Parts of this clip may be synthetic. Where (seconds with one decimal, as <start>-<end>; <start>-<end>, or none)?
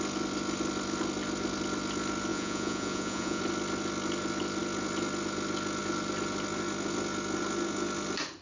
2.3-3.4